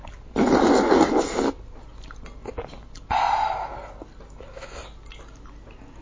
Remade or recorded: recorded